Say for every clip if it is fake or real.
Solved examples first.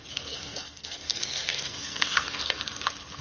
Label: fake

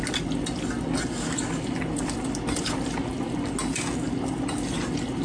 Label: real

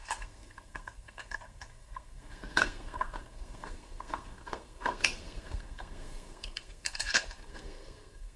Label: fake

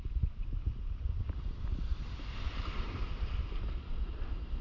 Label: real